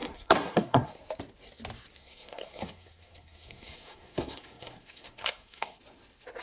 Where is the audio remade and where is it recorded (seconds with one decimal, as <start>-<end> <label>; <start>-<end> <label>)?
0.0-1.0 remade; 1.0-2.0 recorded; 2.0-5.8 remade; 5.8-6.4 recorded